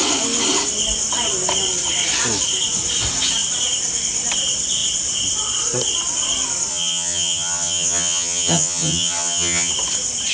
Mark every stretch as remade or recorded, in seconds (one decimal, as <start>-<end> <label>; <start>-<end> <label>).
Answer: 0.0-6.7 recorded; 6.7-9.7 remade; 9.7-10.3 recorded